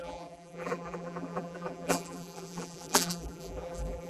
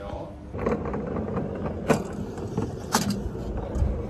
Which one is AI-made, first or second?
first